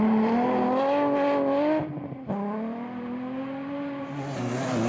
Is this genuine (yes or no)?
yes